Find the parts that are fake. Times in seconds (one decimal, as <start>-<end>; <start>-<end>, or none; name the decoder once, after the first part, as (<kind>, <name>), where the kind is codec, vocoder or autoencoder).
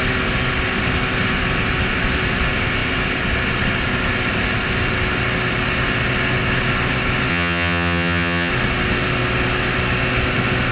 7.3-8.5 (vocoder, HiFi-GAN)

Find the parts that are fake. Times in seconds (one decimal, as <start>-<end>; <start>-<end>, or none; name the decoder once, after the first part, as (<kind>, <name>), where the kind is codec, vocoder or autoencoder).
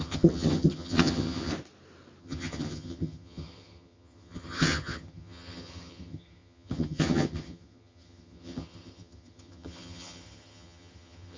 0.0-1.5 (vocoder, HiFi-GAN); 2.2-11.4